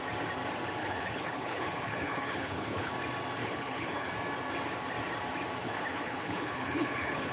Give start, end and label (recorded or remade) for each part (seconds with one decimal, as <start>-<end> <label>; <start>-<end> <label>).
0.0-0.8 recorded; 0.8-2.9 remade; 2.9-3.4 recorded; 3.4-4.1 remade; 4.1-5.6 recorded; 5.6-7.3 remade